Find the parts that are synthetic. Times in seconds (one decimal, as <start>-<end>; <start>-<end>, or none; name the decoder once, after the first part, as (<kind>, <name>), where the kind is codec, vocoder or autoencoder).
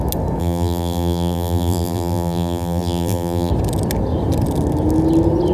0.4-3.5 (vocoder, BigVGAN v2)